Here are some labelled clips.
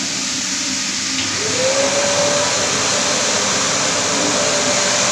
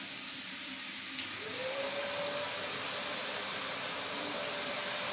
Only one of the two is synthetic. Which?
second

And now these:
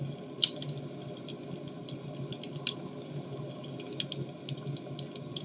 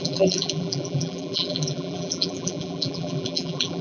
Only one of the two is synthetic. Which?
second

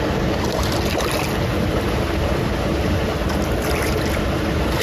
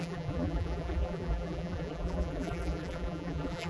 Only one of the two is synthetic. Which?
second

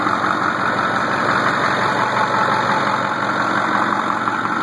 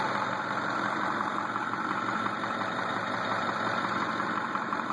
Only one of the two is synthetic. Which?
second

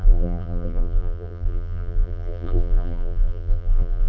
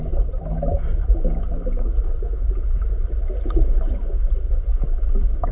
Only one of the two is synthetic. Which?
first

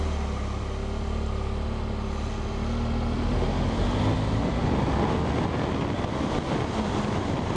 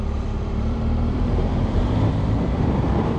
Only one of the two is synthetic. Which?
second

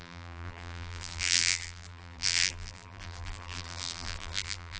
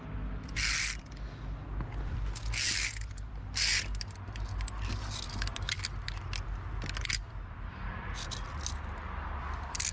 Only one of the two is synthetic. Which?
first